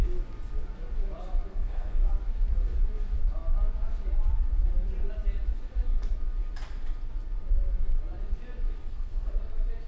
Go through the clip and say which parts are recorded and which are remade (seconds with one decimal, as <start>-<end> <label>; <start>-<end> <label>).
0.0-1.5 recorded; 1.5-2.1 remade; 2.1-8.8 recorded; 8.8-9.3 remade; 9.3-9.9 recorded